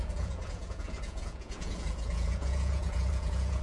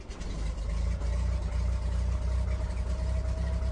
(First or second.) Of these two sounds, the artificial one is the first